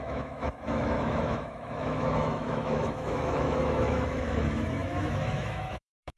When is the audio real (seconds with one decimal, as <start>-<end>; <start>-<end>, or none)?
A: none